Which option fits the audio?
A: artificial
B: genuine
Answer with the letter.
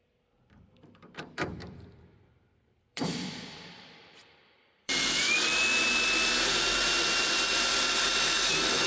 A